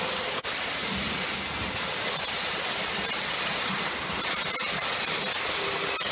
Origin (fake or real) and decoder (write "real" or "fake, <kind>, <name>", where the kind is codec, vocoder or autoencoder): real